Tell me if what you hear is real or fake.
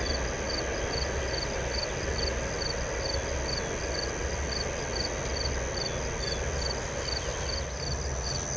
real